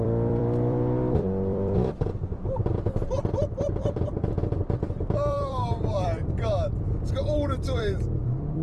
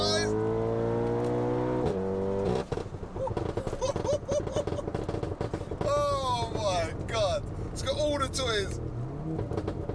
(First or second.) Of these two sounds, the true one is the second